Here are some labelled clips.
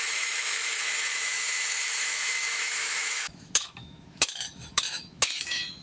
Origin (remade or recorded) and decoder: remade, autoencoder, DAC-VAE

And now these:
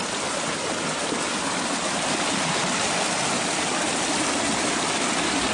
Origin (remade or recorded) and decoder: recorded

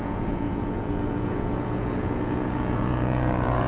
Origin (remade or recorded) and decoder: remade, vocoder, Vocos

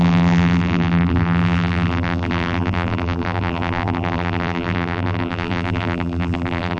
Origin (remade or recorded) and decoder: remade, vocoder, BigVGAN v2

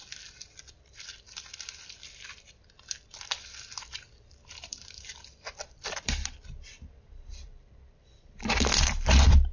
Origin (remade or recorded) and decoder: remade, vocoder, BigVGAN v2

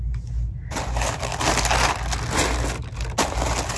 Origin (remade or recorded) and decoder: recorded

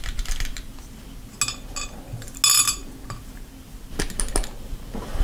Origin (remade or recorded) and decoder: recorded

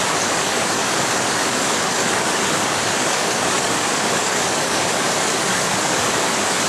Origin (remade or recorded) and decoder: remade, codec, DAC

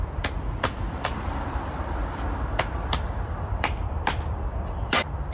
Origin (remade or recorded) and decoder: remade, vocoder, BigVGAN v2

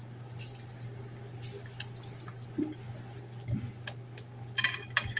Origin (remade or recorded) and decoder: recorded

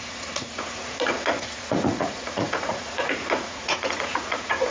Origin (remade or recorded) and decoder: remade, vocoder, Vocos